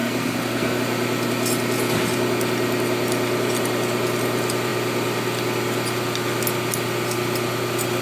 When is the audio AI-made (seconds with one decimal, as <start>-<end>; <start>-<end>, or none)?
0.0-0.8